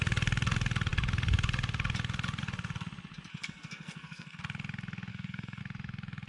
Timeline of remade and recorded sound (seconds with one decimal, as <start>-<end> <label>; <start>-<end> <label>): 0.0-3.3 recorded; 3.3-4.4 remade; 4.4-5.1 recorded; 5.1-5.6 remade; 5.6-6.3 recorded